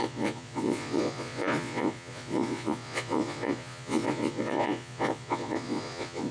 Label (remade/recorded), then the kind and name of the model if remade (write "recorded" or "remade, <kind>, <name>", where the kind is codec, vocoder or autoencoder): remade, vocoder, Vocos